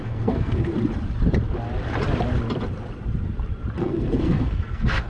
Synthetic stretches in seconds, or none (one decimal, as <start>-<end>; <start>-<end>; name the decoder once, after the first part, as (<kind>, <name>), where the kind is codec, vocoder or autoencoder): 0.0-0.7 (codec, SNAC); 3.8-5.1